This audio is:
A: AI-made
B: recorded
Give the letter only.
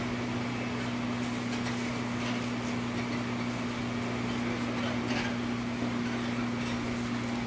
B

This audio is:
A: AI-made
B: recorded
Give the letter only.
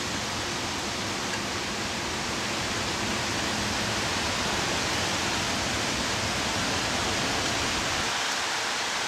B